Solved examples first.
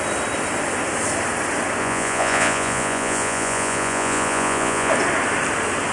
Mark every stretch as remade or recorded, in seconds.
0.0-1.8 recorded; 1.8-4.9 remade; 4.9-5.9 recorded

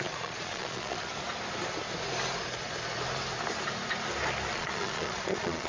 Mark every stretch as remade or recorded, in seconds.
0.0-1.1 remade; 1.1-4.5 recorded; 4.5-5.7 remade

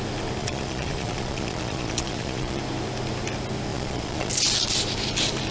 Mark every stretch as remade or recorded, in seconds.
0.0-0.4 recorded; 0.4-2.6 remade; 2.6-3.7 recorded; 3.7-4.3 remade; 4.3-5.5 recorded

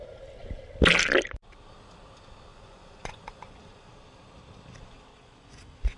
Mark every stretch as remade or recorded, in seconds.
0.0-2.5 recorded; 2.5-3.9 remade; 3.9-5.1 recorded; 5.1-6.0 remade